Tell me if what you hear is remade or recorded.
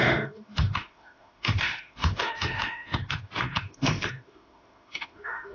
remade